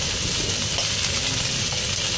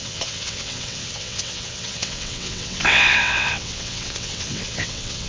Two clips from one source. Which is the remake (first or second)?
second